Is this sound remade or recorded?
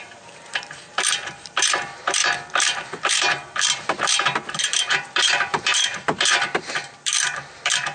remade